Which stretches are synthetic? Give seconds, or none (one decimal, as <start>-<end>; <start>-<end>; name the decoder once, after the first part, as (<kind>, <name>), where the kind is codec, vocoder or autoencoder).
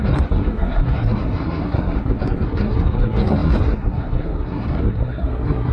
0.0-5.7 (codec, SNAC)